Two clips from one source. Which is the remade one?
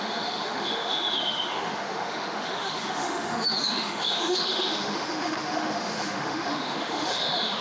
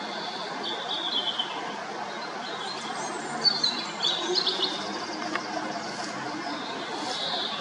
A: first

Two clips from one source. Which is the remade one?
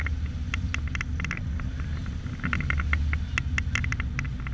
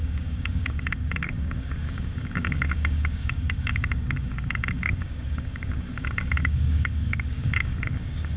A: second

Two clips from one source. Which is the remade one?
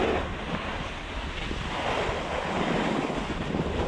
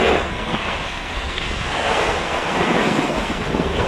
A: second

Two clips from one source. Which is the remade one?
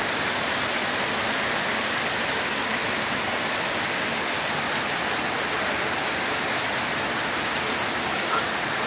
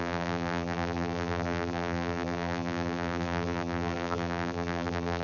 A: second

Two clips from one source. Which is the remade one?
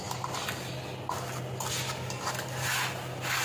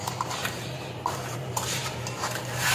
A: second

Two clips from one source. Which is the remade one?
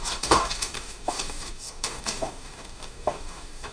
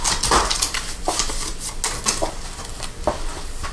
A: first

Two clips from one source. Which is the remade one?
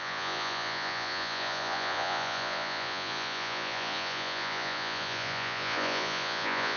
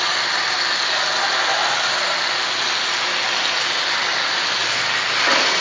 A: first